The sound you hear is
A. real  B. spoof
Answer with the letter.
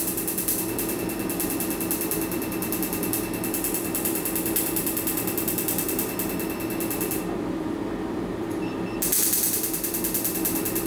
B